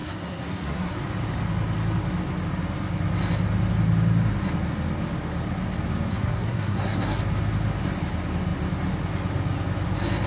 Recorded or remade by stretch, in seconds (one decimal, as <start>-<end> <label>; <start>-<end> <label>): 0.0-1.0 remade; 1.0-6.1 recorded; 6.1-7.2 remade; 7.2-10.3 recorded